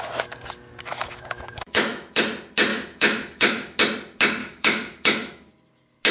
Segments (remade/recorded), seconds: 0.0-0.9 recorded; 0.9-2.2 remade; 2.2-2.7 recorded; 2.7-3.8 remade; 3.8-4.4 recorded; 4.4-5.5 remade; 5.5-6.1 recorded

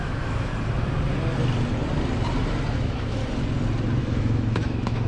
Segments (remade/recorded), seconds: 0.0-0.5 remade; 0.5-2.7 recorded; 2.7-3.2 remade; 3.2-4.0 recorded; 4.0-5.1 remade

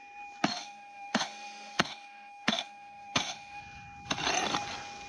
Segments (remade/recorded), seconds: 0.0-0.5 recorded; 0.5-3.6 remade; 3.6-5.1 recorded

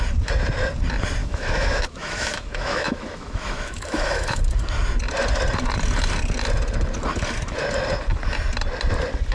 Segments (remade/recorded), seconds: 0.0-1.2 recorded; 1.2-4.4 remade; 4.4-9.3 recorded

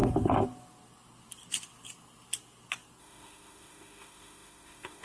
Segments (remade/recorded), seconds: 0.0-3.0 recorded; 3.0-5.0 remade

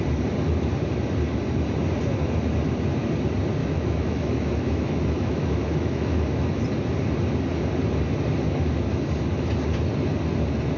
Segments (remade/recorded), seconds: 0.0-3.6 recorded; 3.6-6.6 remade; 6.6-10.8 recorded

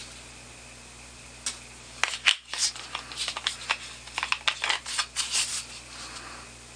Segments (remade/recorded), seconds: 0.0-6.8 recorded